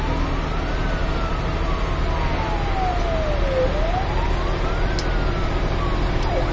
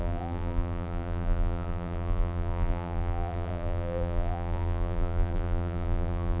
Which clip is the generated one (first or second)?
second